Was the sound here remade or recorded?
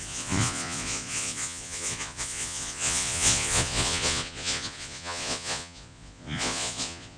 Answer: remade